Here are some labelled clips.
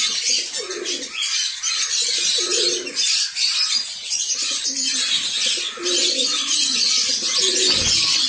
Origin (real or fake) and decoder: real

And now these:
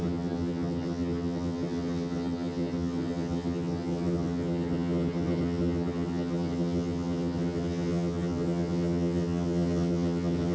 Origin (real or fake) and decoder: fake, vocoder, HiFi-GAN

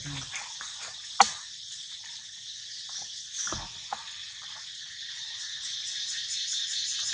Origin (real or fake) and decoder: real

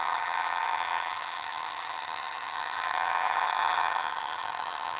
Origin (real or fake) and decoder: fake, vocoder, HiFi-GAN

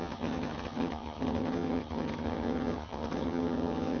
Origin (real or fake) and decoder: fake, vocoder, HiFi-GAN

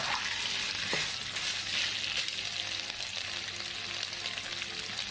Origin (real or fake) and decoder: real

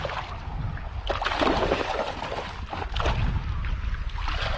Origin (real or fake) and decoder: real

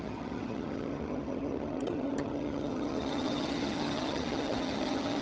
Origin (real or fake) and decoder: fake, vocoder, HiFi-GAN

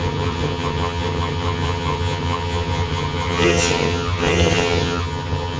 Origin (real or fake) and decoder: fake, vocoder, HiFi-GAN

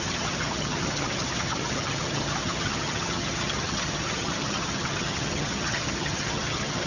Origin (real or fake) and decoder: fake, vocoder, HiFi-GAN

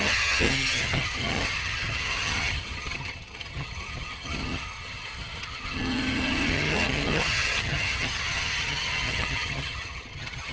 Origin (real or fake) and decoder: fake, vocoder, HiFi-GAN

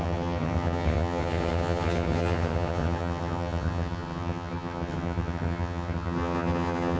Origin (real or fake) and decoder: fake, vocoder, HiFi-GAN